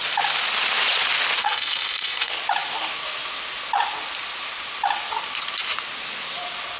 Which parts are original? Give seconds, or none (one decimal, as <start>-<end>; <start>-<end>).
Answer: 0.0-1.4; 2.3-6.8